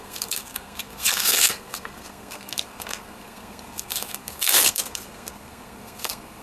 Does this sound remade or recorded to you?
remade